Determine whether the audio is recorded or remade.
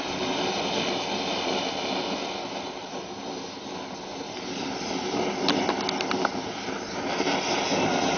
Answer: recorded